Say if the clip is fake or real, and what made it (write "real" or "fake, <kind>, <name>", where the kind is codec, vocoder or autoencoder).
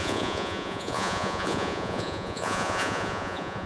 fake, vocoder, Vocos